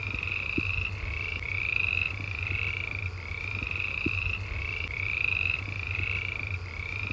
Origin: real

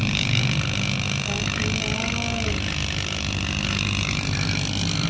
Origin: real